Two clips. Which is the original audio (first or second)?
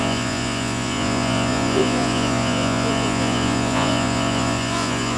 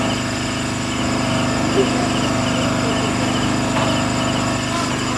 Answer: second